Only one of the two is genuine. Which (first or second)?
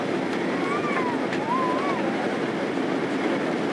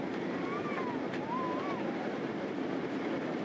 first